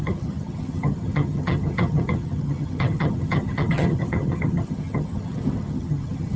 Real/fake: fake